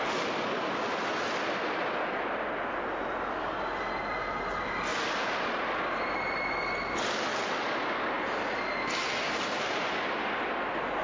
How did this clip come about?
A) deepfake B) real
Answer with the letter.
B